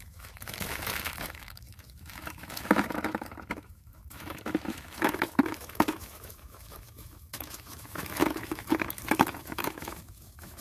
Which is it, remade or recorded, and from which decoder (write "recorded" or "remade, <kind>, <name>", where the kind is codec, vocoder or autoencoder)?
remade, autoencoder, DAC-VAE